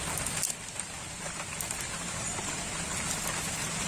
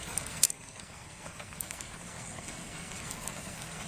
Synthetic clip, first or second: second